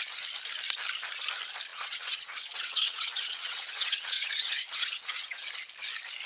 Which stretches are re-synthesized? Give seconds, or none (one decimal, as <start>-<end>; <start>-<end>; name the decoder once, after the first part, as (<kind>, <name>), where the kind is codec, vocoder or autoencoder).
1.7-5.5 (vocoder, WaveNeXt)